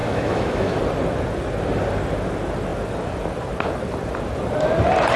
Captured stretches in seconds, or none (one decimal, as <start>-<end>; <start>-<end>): 0.8-5.2